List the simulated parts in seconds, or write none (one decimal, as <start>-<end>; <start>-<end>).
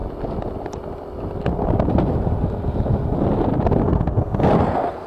3.8-4.5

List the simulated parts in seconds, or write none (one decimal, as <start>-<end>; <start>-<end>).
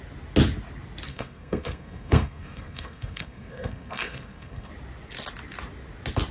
1.1-4.7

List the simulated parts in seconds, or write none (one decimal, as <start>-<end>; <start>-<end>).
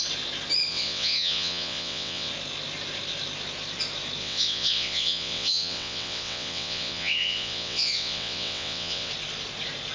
0.7-2.3; 4.2-9.1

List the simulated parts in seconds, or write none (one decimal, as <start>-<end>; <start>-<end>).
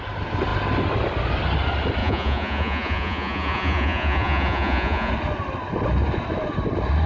2.0-5.1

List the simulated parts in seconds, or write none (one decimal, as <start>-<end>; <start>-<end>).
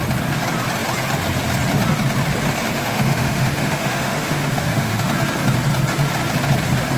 2.8-5.1